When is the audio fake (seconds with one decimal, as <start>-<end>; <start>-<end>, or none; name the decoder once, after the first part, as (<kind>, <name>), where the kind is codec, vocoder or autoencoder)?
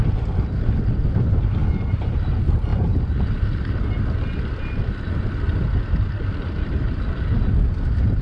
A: none